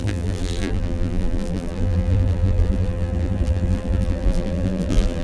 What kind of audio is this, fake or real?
fake